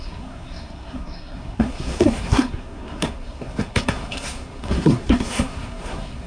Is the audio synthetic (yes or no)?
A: yes